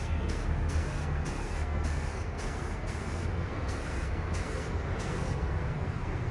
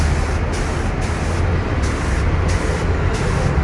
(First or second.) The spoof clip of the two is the first